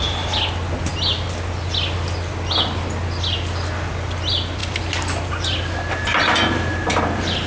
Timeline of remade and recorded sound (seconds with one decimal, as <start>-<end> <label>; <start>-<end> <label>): 0.0-7.5 recorded